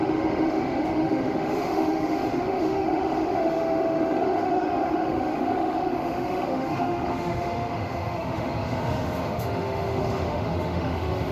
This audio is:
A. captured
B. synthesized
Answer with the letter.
B